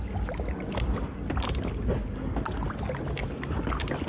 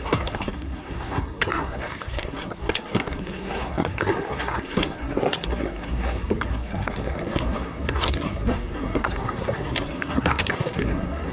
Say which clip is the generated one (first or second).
second